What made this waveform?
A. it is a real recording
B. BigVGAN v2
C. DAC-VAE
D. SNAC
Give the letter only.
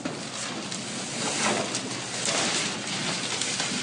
A